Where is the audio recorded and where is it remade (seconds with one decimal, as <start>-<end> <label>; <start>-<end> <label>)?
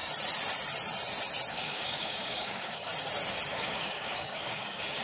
0.0-1.5 recorded; 1.5-2.9 remade; 2.9-3.5 recorded; 3.5-5.0 remade